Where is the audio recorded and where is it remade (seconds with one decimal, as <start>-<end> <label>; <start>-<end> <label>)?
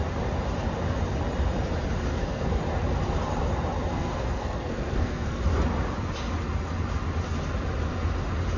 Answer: 0.0-2.1 recorded; 2.1-2.6 remade; 2.6-3.9 recorded; 3.9-5.4 remade; 5.4-8.6 recorded